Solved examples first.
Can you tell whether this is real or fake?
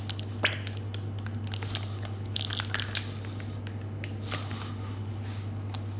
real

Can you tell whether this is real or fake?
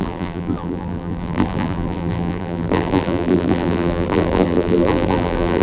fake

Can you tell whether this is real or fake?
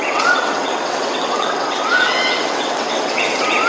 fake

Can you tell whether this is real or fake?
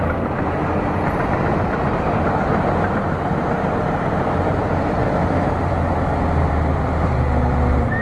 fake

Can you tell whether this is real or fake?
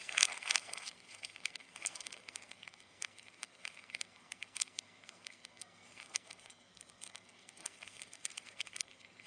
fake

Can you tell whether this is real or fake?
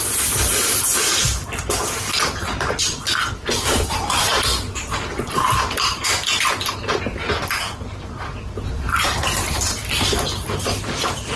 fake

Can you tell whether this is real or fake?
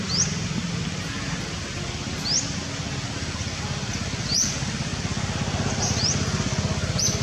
real